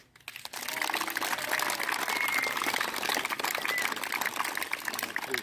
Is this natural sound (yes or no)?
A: yes